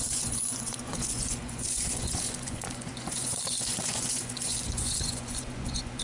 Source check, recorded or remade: remade